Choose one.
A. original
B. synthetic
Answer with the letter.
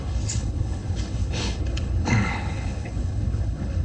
B